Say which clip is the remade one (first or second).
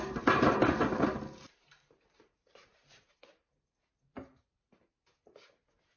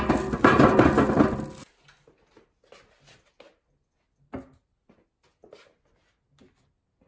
first